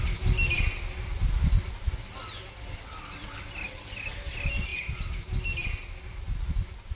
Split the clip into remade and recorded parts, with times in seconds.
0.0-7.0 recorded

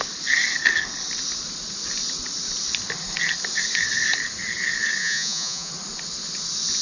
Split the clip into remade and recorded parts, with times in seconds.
0.0-5.0 recorded; 5.0-5.7 remade; 5.7-6.8 recorded